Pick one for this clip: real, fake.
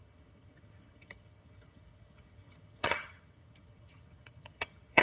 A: fake